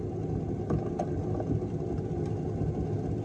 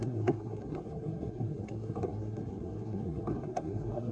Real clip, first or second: first